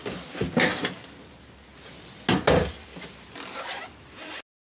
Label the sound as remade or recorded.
recorded